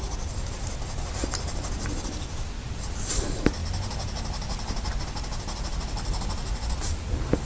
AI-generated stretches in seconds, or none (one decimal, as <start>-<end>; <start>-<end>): none